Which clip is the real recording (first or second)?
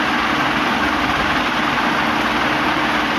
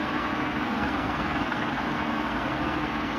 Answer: first